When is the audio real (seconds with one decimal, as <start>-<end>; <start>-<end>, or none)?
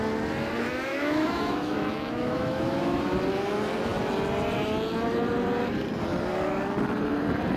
0.0-0.9; 3.0-7.6